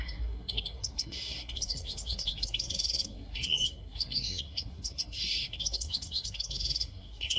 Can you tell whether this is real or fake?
fake